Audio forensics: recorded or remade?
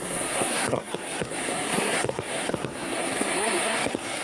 remade